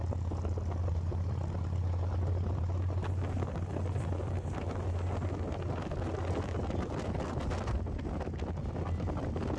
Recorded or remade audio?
recorded